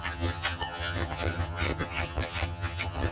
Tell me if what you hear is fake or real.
fake